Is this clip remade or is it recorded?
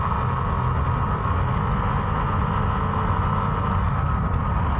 recorded